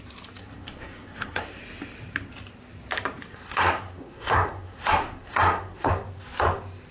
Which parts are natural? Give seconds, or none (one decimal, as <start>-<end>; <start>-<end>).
0.0-0.4; 1.6-3.3; 5.9-6.9